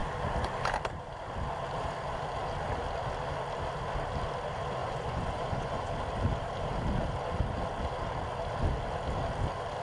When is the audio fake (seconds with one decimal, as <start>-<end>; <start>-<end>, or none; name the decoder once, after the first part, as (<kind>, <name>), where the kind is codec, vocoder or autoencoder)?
4.8-5.9 (vocoder, Vocos)